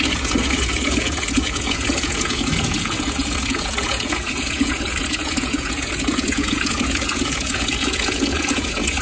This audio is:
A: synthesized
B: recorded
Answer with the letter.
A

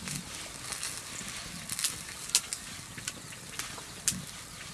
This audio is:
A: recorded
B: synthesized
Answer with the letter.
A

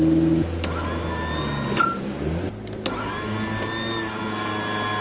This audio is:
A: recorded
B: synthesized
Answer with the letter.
A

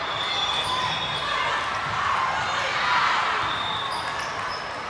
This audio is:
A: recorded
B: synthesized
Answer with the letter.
A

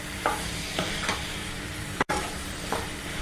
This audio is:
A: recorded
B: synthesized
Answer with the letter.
B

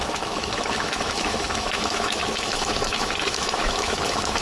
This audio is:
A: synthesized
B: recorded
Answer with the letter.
A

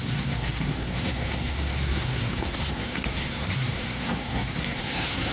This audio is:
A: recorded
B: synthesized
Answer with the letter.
B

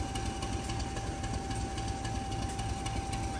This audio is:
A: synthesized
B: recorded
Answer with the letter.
B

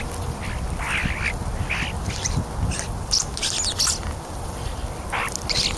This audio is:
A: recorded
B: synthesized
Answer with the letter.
A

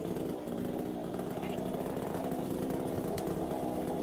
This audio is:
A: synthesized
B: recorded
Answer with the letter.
B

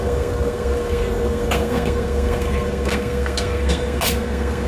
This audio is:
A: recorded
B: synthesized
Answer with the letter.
B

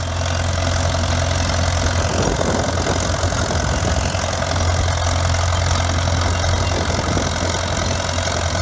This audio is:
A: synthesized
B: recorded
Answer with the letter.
B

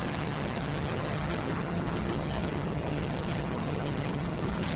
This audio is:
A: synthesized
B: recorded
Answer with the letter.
A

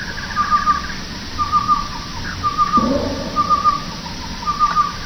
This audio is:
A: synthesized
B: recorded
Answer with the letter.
B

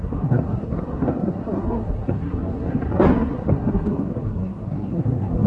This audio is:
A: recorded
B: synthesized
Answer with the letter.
B